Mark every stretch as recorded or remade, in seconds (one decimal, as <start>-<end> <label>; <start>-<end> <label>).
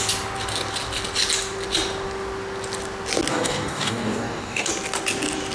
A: 0.0-3.3 recorded; 3.3-4.7 remade; 4.7-5.5 recorded